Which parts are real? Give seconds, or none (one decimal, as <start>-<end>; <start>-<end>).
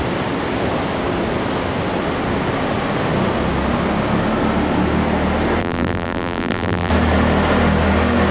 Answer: 0.0-5.6; 6.9-8.3